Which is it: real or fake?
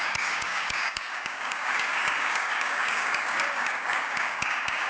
fake